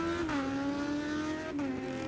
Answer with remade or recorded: recorded